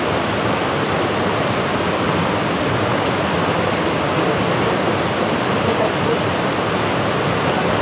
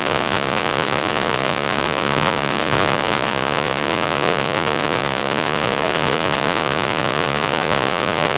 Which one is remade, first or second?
second